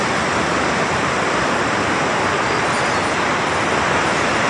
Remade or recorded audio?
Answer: recorded